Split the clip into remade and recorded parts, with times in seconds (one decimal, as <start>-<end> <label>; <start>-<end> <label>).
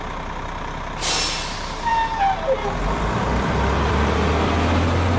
0.0-5.2 recorded